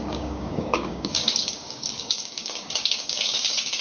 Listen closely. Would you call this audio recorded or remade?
remade